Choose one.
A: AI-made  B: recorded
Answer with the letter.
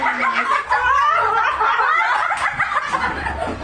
B